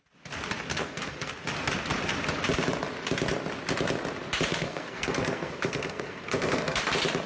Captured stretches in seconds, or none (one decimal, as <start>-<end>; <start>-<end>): 0.0-0.7; 1.3-4.5; 6.8-7.3